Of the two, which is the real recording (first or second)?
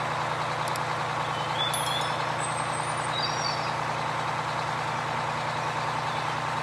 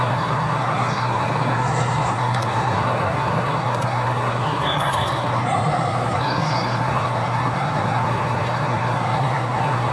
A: first